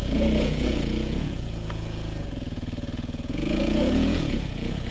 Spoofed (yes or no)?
yes